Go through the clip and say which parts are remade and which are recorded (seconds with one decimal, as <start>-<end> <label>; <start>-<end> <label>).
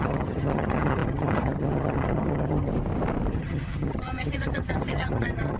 0.0-2.7 remade; 2.7-3.3 recorded; 3.3-5.6 remade